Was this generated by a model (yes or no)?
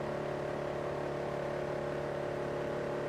no